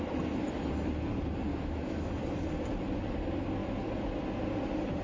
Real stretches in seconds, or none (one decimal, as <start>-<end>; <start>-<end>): 0.0-1.5; 2.1-5.0